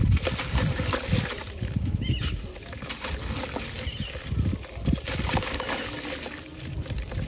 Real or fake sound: real